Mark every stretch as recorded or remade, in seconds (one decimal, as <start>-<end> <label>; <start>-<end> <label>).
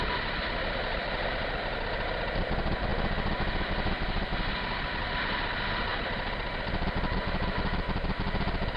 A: 0.0-8.8 recorded